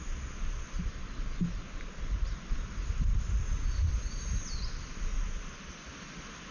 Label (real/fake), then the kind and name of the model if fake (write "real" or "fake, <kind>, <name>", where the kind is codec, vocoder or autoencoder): real